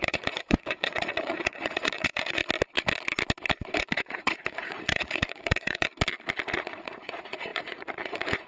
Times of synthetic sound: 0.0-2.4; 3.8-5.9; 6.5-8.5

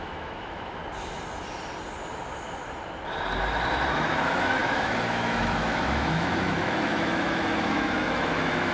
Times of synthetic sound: 0.0-0.8; 3.9-8.7

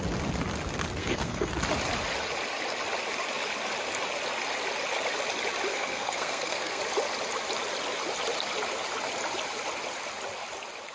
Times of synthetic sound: 1.0-1.5; 5.7-6.8

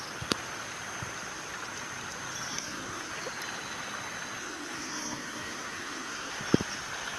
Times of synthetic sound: 2.5-3.1; 4.4-6.3

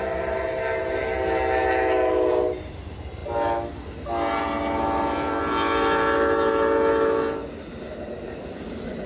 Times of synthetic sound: none